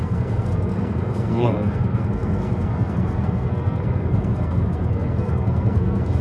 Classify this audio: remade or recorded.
remade